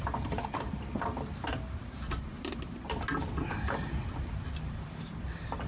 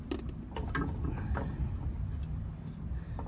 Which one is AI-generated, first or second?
first